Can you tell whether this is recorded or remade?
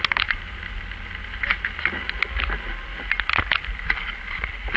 recorded